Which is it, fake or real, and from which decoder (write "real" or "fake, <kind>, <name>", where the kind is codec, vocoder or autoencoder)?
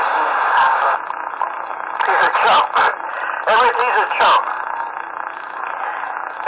real